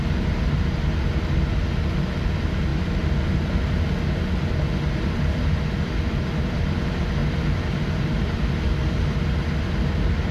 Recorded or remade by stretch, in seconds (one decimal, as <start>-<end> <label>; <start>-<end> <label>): 0.0-10.3 recorded